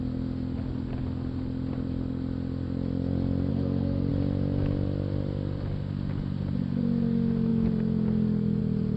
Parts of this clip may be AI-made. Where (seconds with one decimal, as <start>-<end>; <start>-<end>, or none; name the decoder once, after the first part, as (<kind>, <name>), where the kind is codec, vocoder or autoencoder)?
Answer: 3.5-4.1 (codec, SNAC)